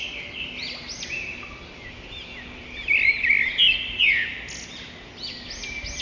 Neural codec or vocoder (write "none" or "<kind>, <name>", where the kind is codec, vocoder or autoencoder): none